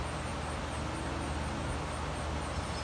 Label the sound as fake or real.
real